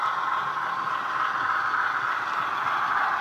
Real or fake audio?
real